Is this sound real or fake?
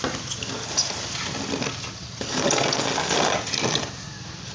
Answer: real